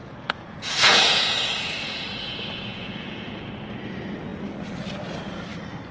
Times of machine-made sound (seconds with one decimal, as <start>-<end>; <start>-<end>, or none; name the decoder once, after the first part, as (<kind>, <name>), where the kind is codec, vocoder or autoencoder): 0.0-3.5 (vocoder, Vocos)